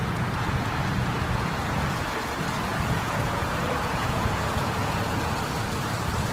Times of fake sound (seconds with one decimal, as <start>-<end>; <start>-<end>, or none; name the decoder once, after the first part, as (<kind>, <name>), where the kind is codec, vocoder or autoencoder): 0.0-2.0 (vocoder, Vocos); 2.7-5.3